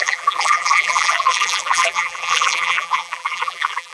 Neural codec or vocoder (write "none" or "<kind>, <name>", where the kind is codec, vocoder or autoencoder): vocoder, BigVGAN v2